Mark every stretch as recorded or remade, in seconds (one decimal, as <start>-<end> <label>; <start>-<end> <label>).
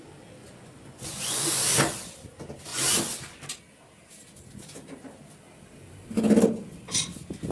0.0-0.4 recorded; 0.4-1.6 remade; 1.6-2.7 recorded; 2.7-3.2 remade; 3.2-7.5 recorded